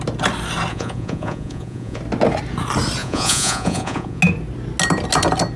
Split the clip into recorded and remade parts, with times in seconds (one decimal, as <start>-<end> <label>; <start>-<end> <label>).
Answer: 0.0-0.7 recorded; 0.7-2.0 remade; 2.0-3.0 recorded; 3.0-4.2 remade; 4.2-5.6 recorded